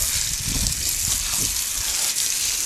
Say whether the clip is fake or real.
real